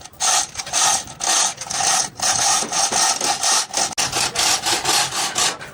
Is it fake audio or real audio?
real